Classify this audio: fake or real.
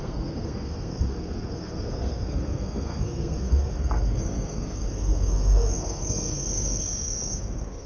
fake